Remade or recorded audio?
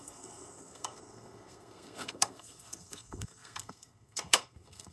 remade